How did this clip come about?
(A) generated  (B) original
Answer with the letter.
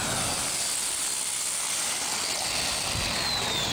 B